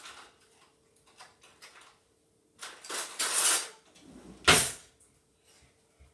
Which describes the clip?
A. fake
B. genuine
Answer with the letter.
B